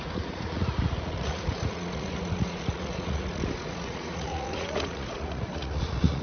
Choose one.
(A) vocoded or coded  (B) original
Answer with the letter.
A